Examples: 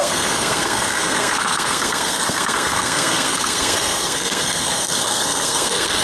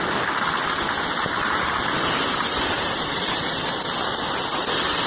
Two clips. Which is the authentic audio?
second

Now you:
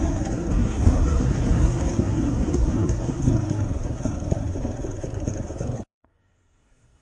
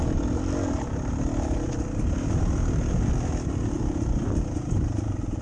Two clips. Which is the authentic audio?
second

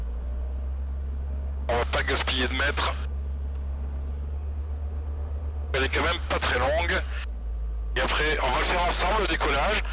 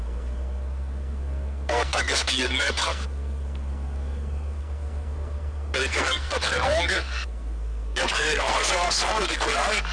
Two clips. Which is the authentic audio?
first